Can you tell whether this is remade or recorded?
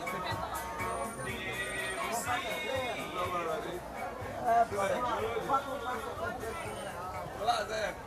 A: recorded